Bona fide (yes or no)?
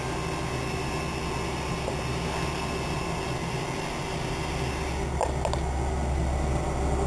yes